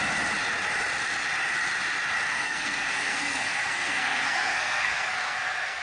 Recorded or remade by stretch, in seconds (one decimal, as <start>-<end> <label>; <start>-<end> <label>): 0.0-2.3 recorded; 2.3-5.8 remade